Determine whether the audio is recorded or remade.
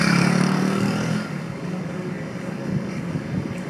remade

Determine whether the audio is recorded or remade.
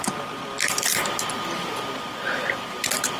recorded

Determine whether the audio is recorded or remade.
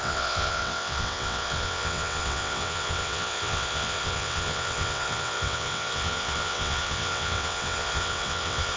remade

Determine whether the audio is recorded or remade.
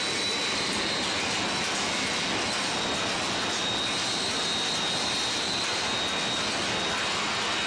recorded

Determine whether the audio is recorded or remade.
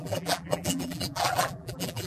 remade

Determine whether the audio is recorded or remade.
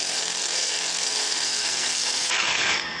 remade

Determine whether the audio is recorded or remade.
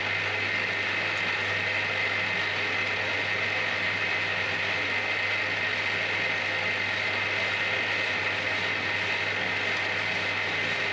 recorded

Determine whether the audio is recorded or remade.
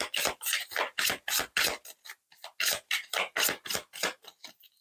recorded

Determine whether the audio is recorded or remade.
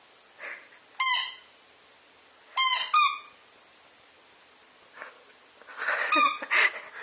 recorded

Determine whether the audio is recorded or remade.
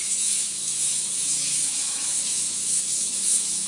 remade